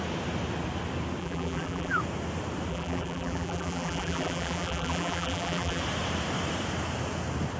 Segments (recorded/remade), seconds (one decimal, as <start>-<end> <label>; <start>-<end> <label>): 0.0-1.2 recorded; 1.2-2.0 remade; 2.0-2.7 recorded; 2.7-5.8 remade; 5.8-7.6 recorded